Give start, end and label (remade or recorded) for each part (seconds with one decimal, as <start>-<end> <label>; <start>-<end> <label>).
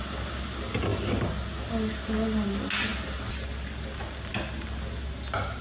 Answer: 0.0-5.6 recorded